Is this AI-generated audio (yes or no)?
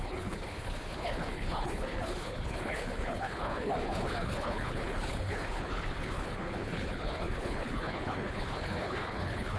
yes